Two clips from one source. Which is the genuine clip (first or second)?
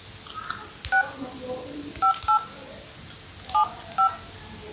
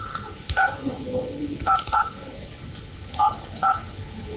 first